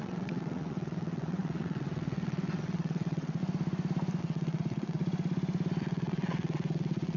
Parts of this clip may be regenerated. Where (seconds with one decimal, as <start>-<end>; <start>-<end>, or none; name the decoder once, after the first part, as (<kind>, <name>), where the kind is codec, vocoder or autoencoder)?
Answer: 0.0-3.4 (vocoder, WaveNeXt); 4.2-5.0; 5.8-7.2